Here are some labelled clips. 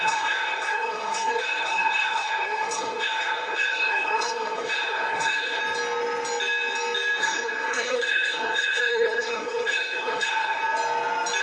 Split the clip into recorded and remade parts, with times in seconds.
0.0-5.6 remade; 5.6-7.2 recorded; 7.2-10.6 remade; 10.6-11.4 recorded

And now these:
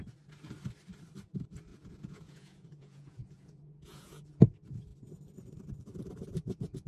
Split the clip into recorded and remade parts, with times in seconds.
0.0-1.7 recorded; 1.7-4.4 remade; 4.4-6.9 recorded

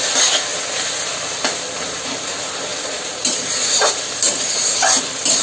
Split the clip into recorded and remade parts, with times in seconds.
0.0-0.5 recorded; 0.5-2.1 remade; 2.1-2.7 recorded; 2.7-4.3 remade; 4.3-5.4 recorded

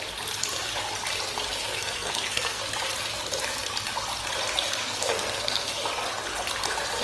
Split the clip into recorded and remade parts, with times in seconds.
0.0-1.6 recorded; 1.6-2.6 remade; 2.6-4.8 recorded; 4.8-5.7 remade; 5.7-7.0 recorded